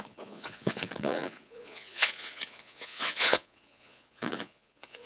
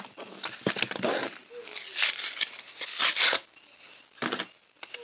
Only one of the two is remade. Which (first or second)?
first